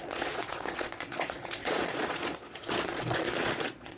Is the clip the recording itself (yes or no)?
no